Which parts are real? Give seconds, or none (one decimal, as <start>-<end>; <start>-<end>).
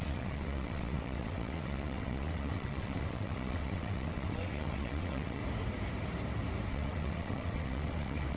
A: 5.4-6.7